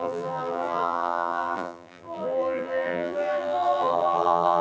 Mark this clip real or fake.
fake